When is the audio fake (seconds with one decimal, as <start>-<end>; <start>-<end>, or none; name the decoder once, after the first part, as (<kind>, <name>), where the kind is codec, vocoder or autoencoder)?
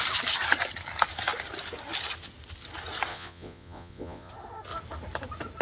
3.1-4.3 (vocoder, Vocos)